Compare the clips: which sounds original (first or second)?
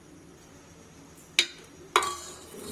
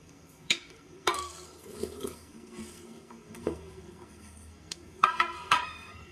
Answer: first